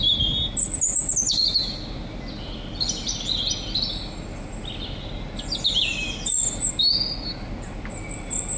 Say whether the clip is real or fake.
real